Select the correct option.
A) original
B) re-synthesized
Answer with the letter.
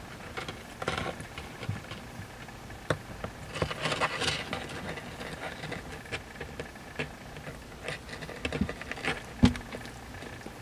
A